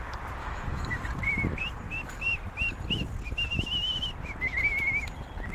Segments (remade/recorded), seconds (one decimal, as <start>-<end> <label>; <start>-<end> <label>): 0.0-0.4 recorded; 0.4-1.0 remade; 1.0-5.5 recorded

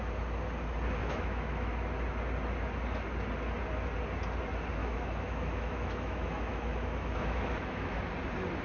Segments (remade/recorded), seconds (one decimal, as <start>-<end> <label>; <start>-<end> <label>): 0.0-1.0 recorded; 1.0-1.7 remade; 1.7-4.8 recorded; 4.8-8.0 remade; 8.0-8.6 recorded

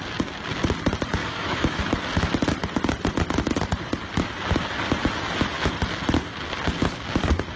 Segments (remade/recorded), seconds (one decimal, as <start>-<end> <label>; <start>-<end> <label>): 0.0-1.2 recorded; 1.2-1.8 remade; 1.8-7.6 recorded

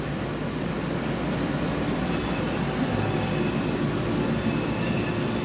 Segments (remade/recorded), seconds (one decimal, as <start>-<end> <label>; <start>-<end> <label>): 0.0-5.4 recorded

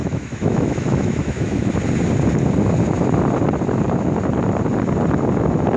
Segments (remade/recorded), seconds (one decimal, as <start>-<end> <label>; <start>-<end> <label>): 0.0-1.7 remade; 1.7-5.8 recorded

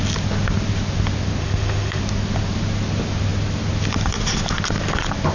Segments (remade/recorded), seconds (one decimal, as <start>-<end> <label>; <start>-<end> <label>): 0.0-1.4 recorded; 1.4-2.0 remade; 2.0-5.3 recorded

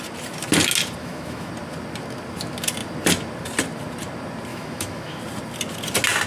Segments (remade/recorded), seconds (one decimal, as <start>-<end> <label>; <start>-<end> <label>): 0.0-1.0 recorded; 1.0-1.5 remade; 1.5-4.5 recorded; 4.5-5.2 remade; 5.2-6.3 recorded